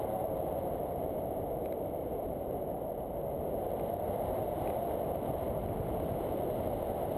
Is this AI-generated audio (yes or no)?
no